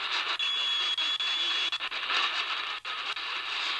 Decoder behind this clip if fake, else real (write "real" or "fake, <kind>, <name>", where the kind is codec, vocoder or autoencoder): real